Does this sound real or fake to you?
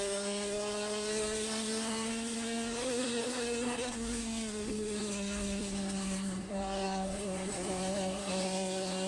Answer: fake